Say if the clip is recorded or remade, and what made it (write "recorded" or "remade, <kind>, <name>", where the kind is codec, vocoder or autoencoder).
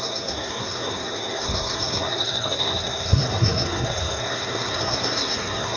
remade, codec, SNAC